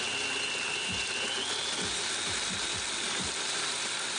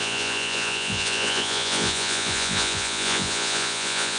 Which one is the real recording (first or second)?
first